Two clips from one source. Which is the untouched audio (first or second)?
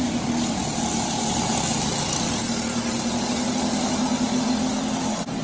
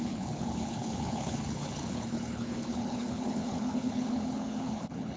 first